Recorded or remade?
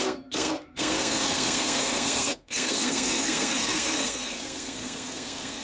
remade